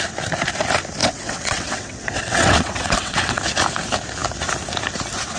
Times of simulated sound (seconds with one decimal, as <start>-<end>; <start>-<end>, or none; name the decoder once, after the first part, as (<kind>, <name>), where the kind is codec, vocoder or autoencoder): 1.0-3.4 (vocoder, WaveNeXt)